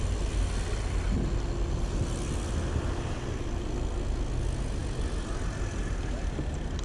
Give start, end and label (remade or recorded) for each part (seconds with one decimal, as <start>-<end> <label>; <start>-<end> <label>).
0.0-6.8 recorded